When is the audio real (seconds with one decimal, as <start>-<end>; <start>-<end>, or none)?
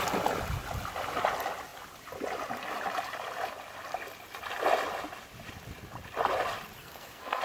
0.0-6.8